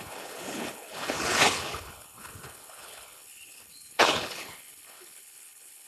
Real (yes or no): no